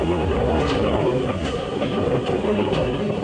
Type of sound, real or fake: fake